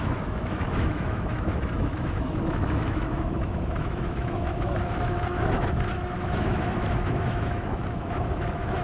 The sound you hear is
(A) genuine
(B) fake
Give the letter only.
B